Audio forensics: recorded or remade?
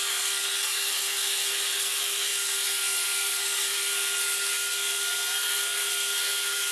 remade